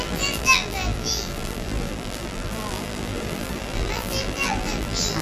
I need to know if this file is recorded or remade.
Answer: remade